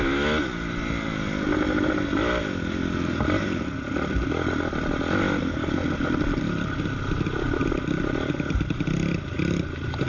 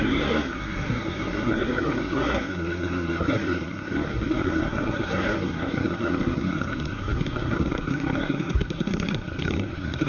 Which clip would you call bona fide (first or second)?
first